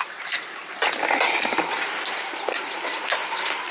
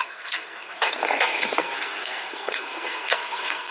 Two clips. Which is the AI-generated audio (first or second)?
second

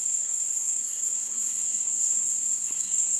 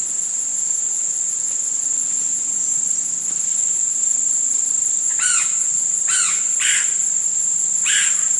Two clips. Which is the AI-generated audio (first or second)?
first